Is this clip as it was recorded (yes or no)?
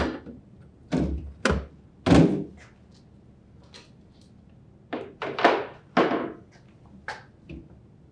yes